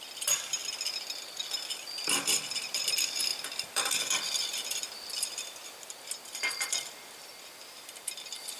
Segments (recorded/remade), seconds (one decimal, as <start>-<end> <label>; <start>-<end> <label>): 0.0-0.6 remade; 0.6-1.8 recorded; 1.8-8.6 remade